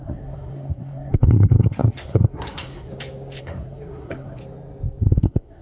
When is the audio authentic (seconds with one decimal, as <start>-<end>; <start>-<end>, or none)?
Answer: 2.9-3.4; 4.4-5.0